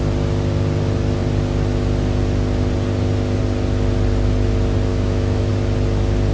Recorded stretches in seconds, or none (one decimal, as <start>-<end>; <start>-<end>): 0.0-4.9; 5.5-6.3